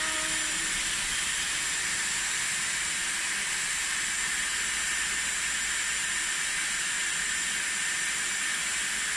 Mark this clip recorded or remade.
recorded